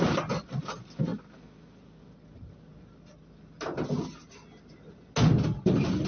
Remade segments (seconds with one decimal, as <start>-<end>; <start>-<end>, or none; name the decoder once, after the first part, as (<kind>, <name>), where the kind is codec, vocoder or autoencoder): none